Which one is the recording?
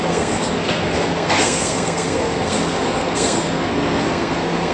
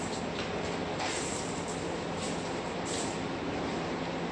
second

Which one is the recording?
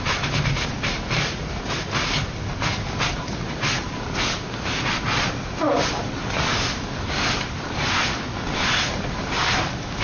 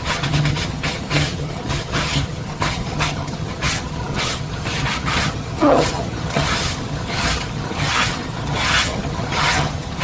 first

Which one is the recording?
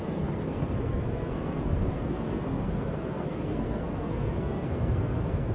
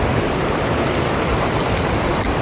second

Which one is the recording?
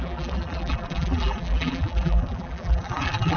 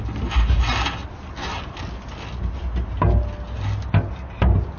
second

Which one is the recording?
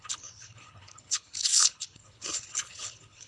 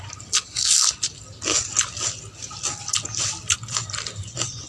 second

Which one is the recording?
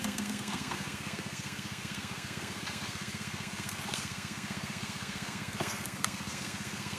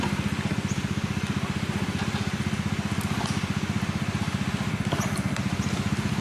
second